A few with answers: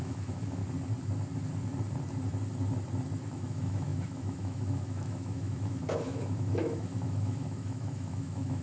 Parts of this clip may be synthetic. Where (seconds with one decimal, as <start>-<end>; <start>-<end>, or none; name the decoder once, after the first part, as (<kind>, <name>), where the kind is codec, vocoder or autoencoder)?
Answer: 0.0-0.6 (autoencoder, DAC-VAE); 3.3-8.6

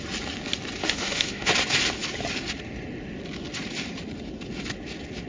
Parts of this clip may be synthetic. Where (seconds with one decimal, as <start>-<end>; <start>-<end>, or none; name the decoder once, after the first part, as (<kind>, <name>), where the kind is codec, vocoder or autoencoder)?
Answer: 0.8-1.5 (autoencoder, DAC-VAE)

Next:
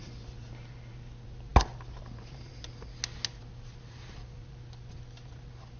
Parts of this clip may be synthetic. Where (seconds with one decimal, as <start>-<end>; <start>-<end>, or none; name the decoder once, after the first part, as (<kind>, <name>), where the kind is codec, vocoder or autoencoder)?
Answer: none